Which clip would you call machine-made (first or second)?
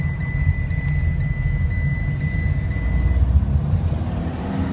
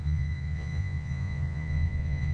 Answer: second